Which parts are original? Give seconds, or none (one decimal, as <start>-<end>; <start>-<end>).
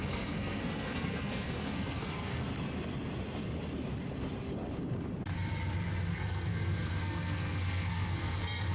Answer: 2.4-6.1